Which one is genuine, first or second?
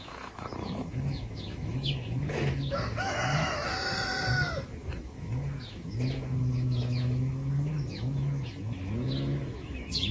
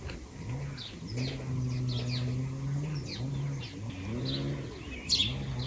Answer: second